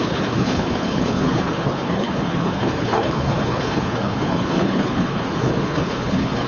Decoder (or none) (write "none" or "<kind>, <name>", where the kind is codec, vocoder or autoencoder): codec, HILCodec